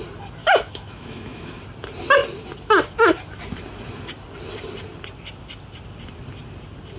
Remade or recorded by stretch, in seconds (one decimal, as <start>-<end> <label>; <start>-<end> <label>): 0.0-0.4 recorded; 0.4-1.6 remade; 1.6-7.0 recorded

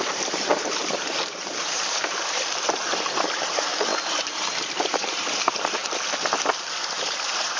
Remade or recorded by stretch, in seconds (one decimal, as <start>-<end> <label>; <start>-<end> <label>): 0.0-5.8 remade; 5.8-7.0 recorded; 7.0-7.6 remade

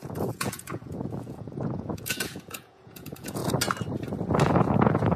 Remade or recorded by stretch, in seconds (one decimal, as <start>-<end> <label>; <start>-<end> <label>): 0.0-3.4 remade; 3.4-4.4 recorded; 4.4-5.2 remade

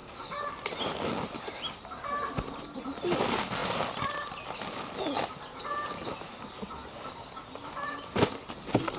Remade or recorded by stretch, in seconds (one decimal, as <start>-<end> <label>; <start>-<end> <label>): 0.0-9.0 recorded

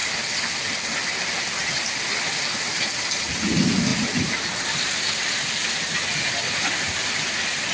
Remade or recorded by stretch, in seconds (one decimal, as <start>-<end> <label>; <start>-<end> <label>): 0.0-7.7 recorded